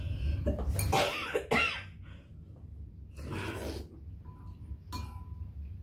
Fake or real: real